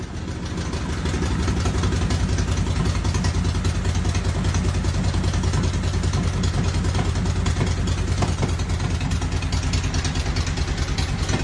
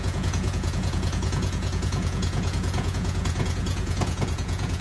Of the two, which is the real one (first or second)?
first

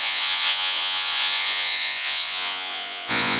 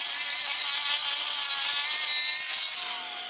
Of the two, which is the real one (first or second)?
second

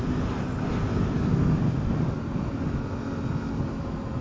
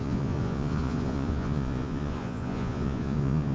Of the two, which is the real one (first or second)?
first